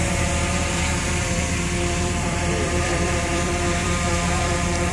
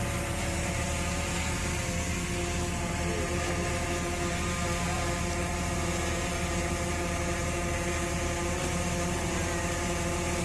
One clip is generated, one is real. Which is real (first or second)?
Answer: second